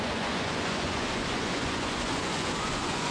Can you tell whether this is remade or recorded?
remade